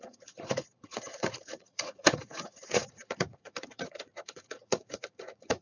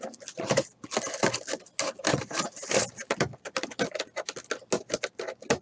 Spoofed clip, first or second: first